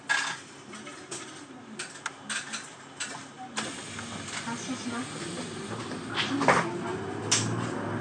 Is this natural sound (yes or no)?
yes